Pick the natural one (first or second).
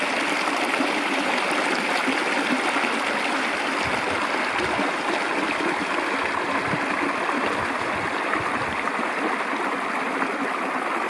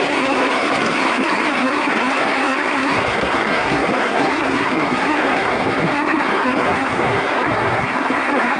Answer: first